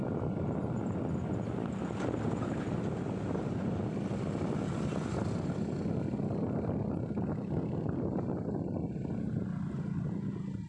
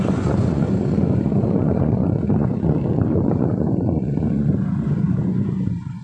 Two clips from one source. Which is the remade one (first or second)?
second